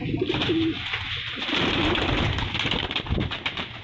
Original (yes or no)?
yes